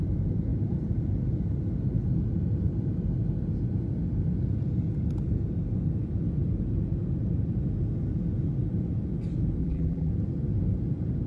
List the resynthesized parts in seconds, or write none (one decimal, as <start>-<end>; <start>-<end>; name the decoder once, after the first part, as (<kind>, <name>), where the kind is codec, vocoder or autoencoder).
9.6-10.1 (vocoder, BigVGAN v2)